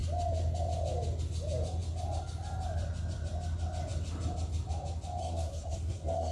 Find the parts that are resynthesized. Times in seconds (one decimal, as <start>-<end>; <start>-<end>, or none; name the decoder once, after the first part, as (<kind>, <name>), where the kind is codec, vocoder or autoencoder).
5.2-6.3 (codec, SNAC)